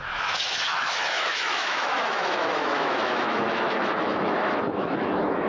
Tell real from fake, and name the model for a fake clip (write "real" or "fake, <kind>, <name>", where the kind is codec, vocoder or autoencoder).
fake, autoencoder, DAC-VAE